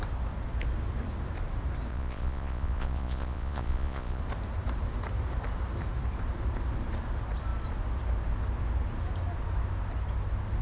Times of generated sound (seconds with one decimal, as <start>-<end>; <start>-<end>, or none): 1.9-4.2